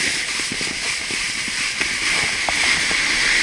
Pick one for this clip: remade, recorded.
recorded